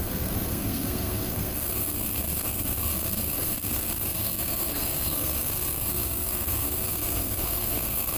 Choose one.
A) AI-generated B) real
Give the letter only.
A